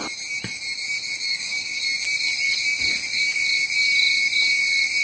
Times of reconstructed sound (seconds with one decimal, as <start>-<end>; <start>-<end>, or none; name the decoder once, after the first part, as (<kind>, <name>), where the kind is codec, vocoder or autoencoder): 1.3-1.8 (codec, DAC)